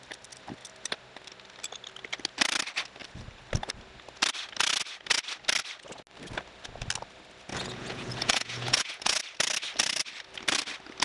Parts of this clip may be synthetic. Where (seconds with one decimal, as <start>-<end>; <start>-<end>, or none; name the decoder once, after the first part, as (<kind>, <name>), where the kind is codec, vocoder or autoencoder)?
7.5-9.2 (vocoder, Vocos)